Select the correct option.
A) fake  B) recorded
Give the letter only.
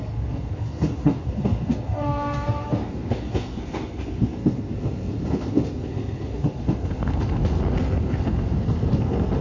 A